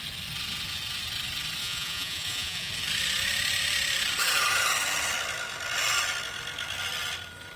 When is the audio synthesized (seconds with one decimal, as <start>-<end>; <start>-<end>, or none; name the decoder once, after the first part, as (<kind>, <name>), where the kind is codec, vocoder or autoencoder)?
1.6-2.7 (vocoder, Vocos)